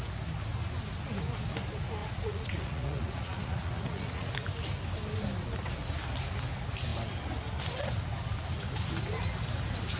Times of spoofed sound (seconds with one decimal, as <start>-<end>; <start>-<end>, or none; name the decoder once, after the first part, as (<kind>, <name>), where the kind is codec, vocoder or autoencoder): 2.0-4.3 (vocoder, Vocos)